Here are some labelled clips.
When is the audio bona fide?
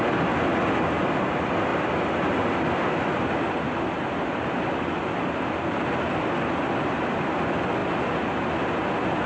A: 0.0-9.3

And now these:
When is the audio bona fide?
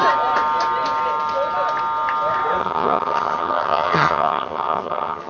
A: 0.0-2.6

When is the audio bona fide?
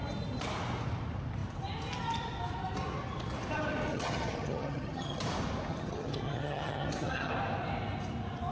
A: 0.0-3.9; 5.2-5.7; 7.3-8.5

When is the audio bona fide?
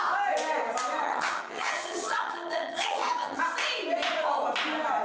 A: 0.0-1.0; 3.4-5.0